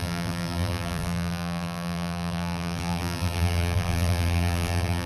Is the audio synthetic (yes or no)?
yes